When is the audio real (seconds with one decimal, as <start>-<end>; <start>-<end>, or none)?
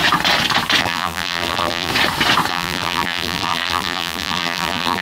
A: 0.0-0.8; 1.9-2.5